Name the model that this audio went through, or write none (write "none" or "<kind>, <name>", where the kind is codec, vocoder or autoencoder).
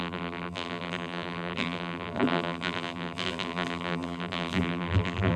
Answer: vocoder, BigVGAN v2